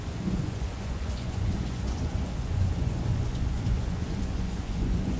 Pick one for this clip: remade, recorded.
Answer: remade